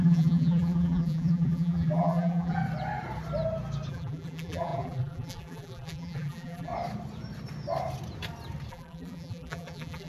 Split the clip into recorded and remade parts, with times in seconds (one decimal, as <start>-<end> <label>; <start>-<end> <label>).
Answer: 0.0-2.6 remade; 2.6-3.9 recorded; 3.9-6.7 remade; 6.7-8.7 recorded; 8.7-10.1 remade